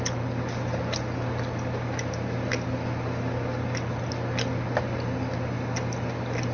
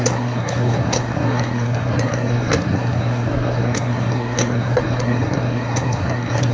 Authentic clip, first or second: first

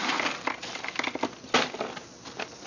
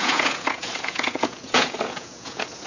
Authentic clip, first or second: first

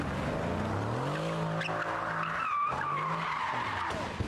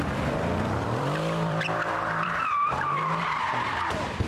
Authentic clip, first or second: first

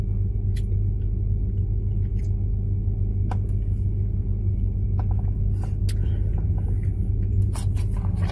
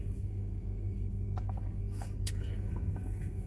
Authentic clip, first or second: first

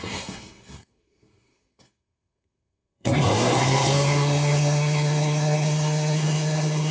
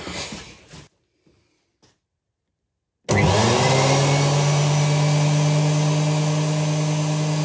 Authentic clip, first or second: second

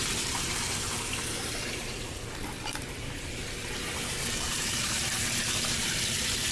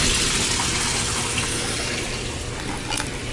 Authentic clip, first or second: second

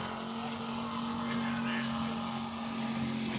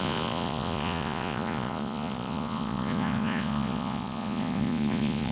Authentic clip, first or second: first